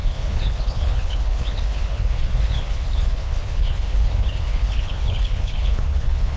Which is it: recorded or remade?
remade